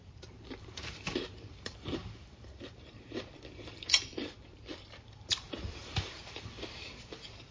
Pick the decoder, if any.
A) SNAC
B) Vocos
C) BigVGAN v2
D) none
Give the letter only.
C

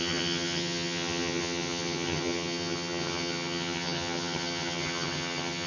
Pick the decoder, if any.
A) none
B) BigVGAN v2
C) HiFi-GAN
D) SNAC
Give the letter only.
C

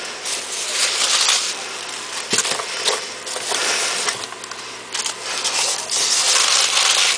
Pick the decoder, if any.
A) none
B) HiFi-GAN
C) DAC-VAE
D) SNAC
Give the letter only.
A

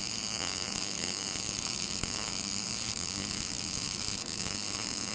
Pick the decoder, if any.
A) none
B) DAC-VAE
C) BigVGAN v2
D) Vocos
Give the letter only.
B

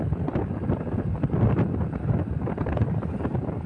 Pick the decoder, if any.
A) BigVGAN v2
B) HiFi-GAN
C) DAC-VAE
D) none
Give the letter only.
A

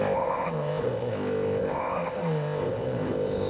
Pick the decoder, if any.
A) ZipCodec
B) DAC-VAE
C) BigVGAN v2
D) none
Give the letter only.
A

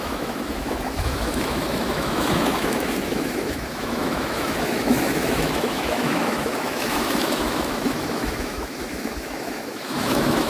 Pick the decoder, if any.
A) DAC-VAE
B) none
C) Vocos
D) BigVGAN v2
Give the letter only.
A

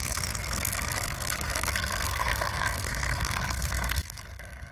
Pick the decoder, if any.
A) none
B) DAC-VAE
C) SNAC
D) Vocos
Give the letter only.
C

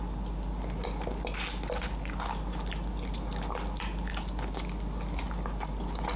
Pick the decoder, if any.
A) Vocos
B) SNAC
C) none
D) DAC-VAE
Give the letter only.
C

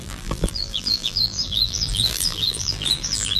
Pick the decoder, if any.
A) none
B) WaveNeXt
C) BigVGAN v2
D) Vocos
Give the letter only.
C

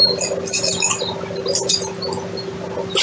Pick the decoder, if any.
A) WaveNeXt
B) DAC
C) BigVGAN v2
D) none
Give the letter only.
D